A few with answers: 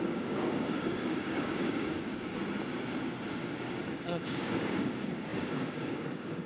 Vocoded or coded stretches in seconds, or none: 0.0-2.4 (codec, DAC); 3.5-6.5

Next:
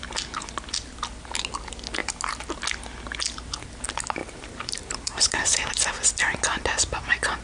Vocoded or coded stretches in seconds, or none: 4.2-5.7 (vocoder, BigVGAN v2)

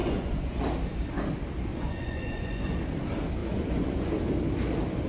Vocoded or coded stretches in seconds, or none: 0.0-0.6 (vocoder, Vocos); 1.7-2.8; 3.4-4.1

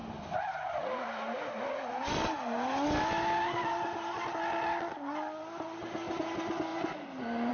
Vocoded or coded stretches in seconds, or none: none

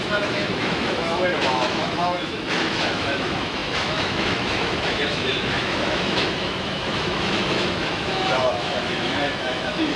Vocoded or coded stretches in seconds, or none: 0.0-10.0 (autoencoder, DAC-VAE)